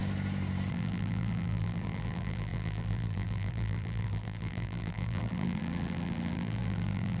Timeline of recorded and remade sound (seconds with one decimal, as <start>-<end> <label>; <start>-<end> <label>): 0.0-0.7 recorded; 0.7-7.2 remade